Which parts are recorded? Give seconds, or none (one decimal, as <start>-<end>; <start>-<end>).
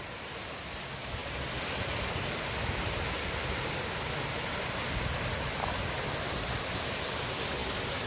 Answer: 0.0-8.1